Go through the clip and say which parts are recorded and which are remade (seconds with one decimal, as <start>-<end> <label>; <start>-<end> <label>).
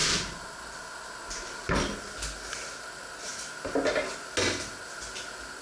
0.0-5.6 recorded